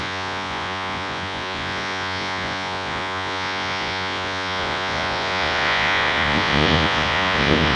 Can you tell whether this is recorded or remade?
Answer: remade